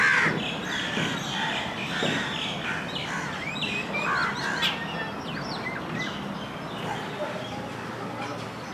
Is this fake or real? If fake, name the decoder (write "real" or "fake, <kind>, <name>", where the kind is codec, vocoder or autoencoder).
real